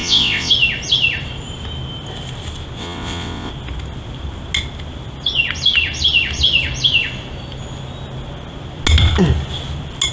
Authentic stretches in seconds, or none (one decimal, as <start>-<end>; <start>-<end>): 0.5-2.8; 3.5-10.1